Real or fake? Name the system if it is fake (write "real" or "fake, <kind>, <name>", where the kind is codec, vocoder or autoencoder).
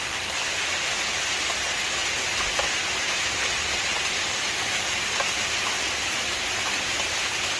real